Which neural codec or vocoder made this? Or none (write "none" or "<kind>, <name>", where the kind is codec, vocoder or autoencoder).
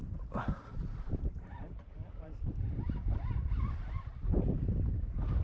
vocoder, BigVGAN v2